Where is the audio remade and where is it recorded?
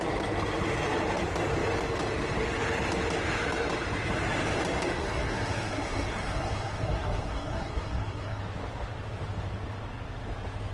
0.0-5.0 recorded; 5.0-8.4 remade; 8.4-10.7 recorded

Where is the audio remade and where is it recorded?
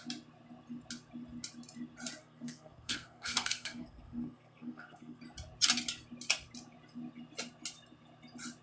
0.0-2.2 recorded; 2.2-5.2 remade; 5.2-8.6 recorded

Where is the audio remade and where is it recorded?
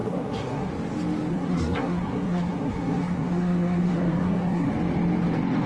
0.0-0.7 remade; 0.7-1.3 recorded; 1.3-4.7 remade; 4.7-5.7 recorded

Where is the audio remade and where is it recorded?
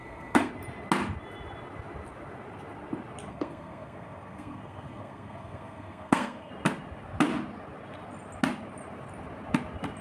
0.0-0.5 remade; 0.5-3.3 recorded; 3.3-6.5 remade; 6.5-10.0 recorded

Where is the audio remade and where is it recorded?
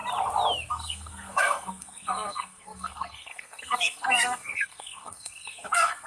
0.0-0.7 recorded; 0.7-6.1 remade